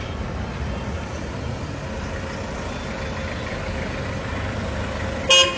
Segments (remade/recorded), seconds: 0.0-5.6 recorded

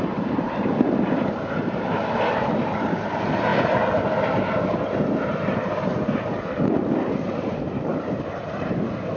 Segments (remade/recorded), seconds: 0.0-3.5 remade; 3.5-4.7 recorded; 4.7-5.9 remade; 5.9-7.0 recorded; 7.0-9.2 remade

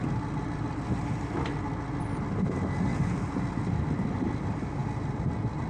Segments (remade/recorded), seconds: 0.0-5.7 recorded

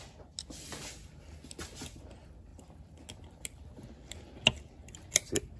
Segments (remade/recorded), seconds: 0.0-5.6 recorded

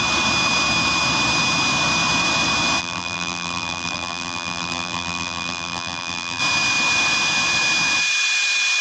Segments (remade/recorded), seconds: 0.0-2.8 recorded; 2.8-6.4 remade; 6.4-8.8 recorded

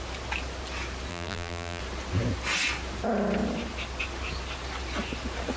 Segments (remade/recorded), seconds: 0.0-1.1 recorded; 1.1-1.8 remade; 1.8-5.6 recorded

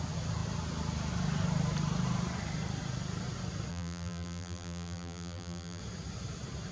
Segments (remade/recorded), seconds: 0.0-3.7 recorded; 3.7-5.8 remade; 5.8-6.7 recorded

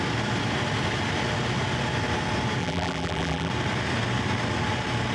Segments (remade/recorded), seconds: 0.0-2.6 recorded; 2.6-3.5 remade; 3.5-5.1 recorded